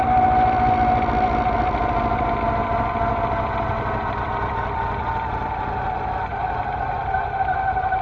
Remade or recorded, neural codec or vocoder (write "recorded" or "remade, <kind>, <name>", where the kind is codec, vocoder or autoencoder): recorded